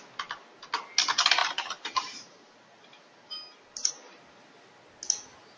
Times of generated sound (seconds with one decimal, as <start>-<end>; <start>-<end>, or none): 1.4-3.9